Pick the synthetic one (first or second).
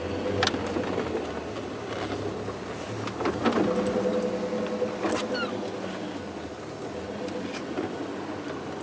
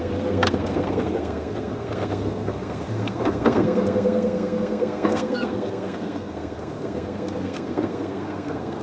second